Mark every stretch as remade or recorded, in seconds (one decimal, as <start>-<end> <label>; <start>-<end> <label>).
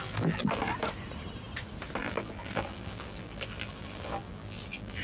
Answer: 0.0-0.6 remade; 0.6-2.0 recorded; 2.0-5.0 remade